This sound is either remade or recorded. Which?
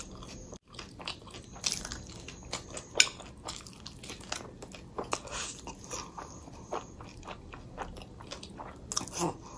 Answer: recorded